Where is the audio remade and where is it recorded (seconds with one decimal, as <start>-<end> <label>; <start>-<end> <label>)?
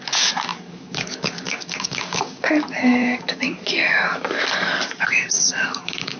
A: 0.0-6.2 remade